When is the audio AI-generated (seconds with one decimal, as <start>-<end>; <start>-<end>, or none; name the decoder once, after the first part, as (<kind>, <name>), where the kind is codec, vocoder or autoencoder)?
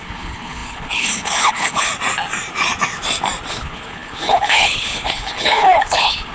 0.0-1.9 (codec, HILCodec); 3.5-6.3